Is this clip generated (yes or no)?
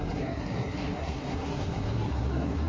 yes